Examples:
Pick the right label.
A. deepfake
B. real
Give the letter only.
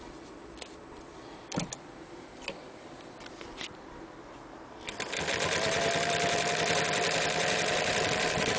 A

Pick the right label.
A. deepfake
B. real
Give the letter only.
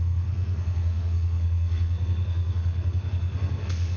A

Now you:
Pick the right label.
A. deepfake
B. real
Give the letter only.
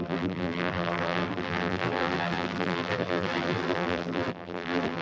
A